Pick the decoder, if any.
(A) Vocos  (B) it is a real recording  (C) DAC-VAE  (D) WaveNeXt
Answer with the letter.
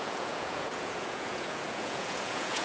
A